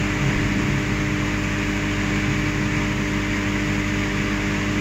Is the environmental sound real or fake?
real